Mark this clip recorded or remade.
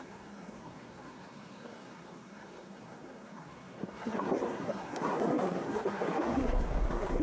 remade